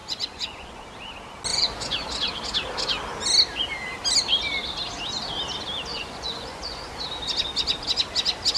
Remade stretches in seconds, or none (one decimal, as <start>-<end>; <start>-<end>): 0.0-0.8; 1.5-2.1; 5.9-7.0